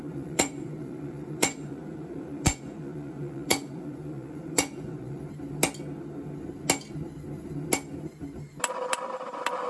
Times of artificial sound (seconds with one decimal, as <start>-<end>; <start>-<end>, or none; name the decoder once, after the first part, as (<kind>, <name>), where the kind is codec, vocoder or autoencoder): 0.0-5.2 (vocoder, Vocos)